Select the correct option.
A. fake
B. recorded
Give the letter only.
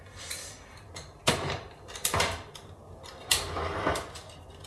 B